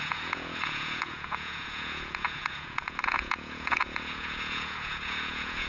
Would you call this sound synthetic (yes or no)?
yes